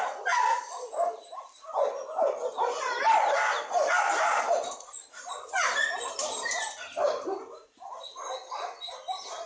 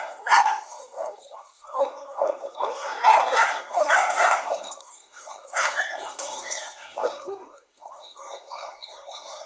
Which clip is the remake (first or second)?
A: second